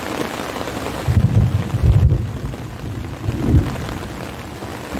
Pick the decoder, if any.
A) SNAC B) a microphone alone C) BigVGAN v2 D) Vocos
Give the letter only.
B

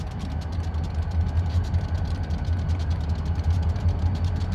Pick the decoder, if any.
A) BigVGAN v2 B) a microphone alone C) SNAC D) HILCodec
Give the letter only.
B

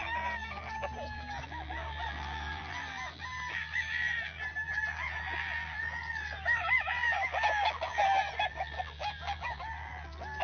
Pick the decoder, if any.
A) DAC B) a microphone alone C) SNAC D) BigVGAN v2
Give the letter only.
D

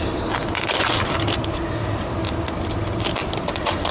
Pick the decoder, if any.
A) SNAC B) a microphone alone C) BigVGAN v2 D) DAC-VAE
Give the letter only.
C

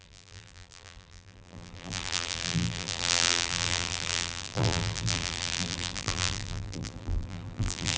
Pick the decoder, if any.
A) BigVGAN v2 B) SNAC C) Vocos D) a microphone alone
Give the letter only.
A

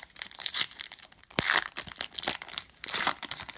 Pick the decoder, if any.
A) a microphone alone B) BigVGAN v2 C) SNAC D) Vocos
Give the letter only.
B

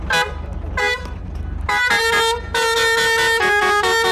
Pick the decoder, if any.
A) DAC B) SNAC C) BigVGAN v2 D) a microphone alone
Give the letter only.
D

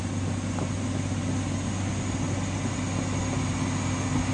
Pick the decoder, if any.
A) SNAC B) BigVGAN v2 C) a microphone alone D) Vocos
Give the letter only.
C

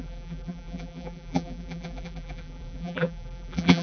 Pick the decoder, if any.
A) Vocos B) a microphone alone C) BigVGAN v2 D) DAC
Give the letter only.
C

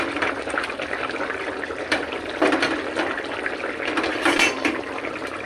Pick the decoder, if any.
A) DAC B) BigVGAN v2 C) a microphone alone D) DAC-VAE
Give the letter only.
B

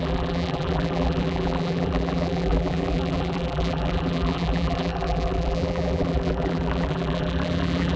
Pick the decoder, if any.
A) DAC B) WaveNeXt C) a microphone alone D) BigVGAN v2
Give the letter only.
D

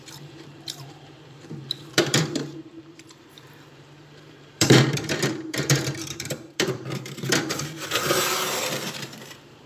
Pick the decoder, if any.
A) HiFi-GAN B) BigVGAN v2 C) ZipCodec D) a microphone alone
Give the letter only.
B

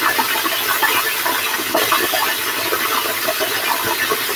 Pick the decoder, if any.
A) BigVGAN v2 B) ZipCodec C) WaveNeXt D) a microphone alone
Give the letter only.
D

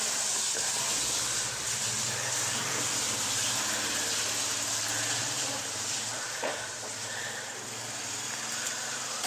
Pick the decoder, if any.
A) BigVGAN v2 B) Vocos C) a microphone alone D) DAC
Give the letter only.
A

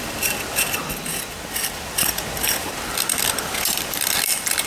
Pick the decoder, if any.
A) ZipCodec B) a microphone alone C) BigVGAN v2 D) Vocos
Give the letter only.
C